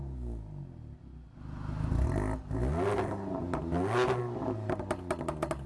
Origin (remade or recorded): recorded